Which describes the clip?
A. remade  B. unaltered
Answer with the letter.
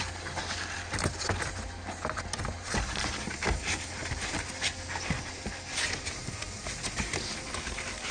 B